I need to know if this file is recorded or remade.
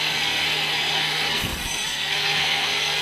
remade